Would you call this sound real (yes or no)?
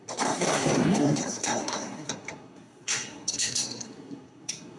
no